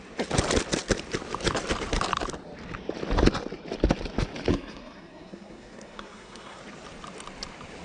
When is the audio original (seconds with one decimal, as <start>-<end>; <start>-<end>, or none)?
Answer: 0.0-4.5; 6.6-7.8